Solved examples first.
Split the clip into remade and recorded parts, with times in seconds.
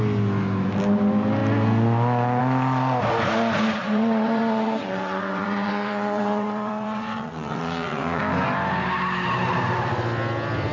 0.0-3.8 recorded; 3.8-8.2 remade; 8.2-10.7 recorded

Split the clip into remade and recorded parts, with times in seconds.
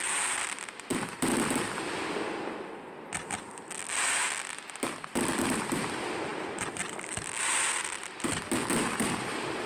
0.0-9.7 recorded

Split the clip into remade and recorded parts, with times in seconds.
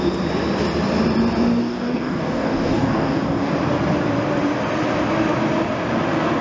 0.0-1.6 recorded; 1.6-3.5 remade; 3.5-6.4 recorded